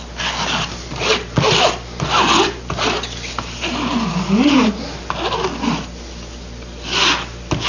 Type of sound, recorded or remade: recorded